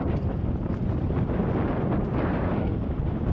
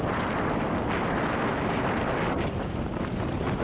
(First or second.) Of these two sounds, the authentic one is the second